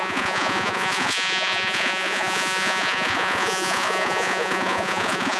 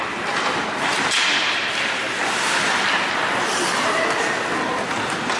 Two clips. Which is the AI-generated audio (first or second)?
first